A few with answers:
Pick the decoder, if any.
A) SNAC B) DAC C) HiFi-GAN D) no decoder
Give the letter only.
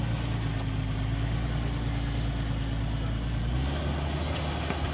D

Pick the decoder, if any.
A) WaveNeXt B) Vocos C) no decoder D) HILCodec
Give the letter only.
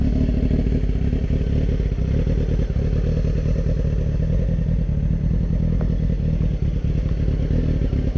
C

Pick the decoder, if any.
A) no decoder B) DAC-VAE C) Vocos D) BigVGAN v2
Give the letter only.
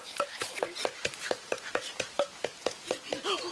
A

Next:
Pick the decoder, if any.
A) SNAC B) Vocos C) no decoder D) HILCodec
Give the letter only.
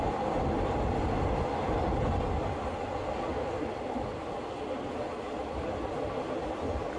C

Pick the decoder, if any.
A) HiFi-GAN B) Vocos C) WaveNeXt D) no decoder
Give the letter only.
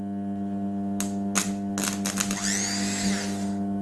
D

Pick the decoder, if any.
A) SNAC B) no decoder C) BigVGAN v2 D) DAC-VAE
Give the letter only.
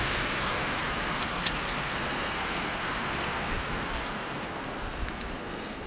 A